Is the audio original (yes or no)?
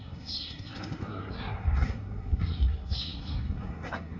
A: no